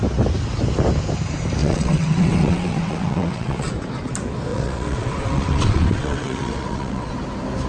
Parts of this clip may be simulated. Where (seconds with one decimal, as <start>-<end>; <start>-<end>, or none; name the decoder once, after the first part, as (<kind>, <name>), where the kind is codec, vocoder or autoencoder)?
1.6-3.7 (vocoder, WaveNeXt); 4.5-7.1